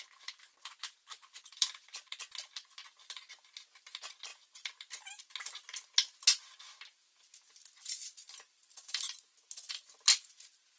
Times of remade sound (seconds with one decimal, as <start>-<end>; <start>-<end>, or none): none